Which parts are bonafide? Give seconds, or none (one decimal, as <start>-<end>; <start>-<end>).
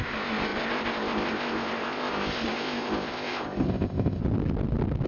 4.2-5.1